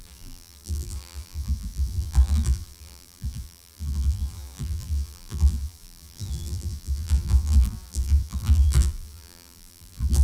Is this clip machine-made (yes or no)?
yes